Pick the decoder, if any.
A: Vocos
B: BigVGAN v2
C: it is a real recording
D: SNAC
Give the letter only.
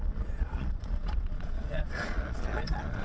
A